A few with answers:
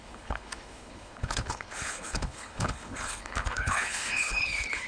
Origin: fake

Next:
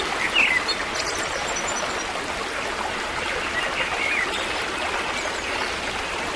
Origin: real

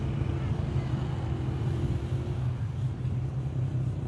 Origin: real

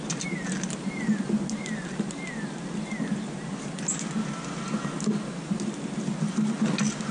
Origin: real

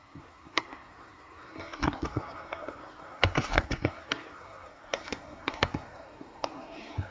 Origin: fake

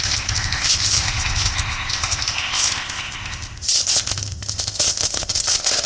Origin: fake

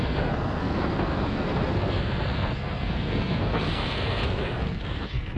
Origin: fake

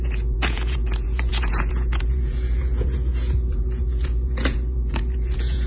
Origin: fake